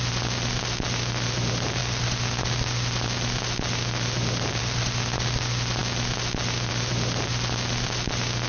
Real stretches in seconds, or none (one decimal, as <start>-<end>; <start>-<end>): 0.0-8.5